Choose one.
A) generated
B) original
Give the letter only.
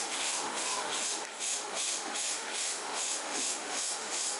A